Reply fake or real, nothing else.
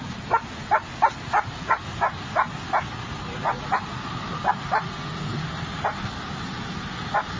real